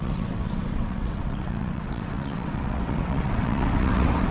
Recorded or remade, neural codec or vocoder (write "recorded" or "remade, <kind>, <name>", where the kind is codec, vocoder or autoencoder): remade, vocoder, WaveNeXt